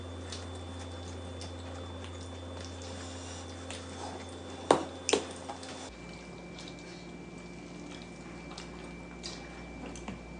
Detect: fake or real real